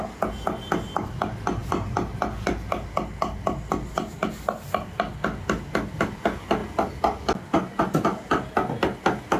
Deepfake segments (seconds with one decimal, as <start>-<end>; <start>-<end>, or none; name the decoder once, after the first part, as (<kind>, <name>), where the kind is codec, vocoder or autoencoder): none